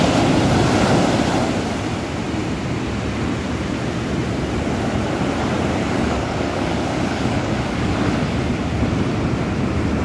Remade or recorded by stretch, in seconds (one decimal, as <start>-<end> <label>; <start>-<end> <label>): 0.0-5.8 recorded; 5.8-7.9 remade; 7.9-10.0 recorded